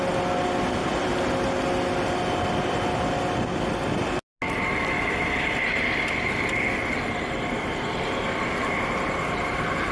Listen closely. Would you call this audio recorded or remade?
recorded